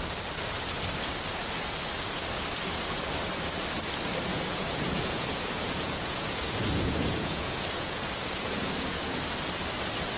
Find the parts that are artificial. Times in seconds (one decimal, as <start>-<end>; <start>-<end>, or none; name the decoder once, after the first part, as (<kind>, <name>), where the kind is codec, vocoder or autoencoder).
4.3-9.2 (vocoder, Vocos)